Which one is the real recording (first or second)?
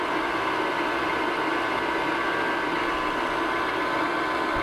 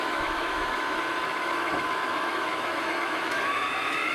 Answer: first